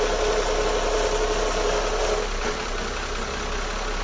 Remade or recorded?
recorded